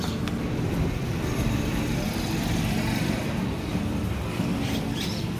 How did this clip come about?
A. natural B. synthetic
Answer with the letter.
B